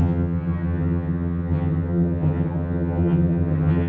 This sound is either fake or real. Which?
fake